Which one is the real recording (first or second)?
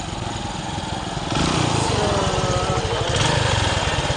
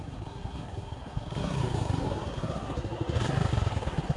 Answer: first